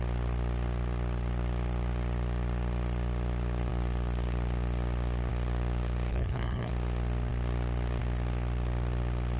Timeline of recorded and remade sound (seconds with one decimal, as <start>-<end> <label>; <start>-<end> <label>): 0.0-6.1 recorded; 6.1-6.7 remade; 6.7-9.4 recorded